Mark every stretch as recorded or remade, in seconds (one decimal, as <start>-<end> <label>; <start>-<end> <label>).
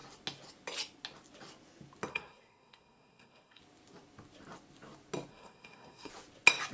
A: 0.0-2.1 recorded; 2.1-3.6 remade; 3.6-5.3 recorded; 5.3-6.1 remade; 6.1-6.7 recorded